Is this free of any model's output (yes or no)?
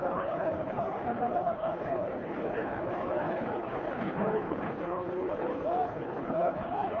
no